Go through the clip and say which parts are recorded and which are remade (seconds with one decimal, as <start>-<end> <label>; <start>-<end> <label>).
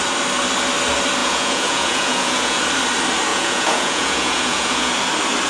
0.0-1.2 recorded; 1.2-2.6 remade; 2.6-3.3 recorded; 3.3-4.9 remade; 4.9-5.5 recorded